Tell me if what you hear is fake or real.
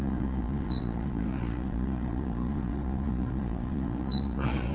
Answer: fake